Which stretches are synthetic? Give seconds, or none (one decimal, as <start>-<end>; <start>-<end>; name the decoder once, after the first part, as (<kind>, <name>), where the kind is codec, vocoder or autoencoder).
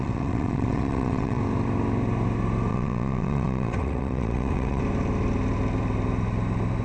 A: 0.0-1.4 (vocoder, WaveNeXt); 2.7-4.8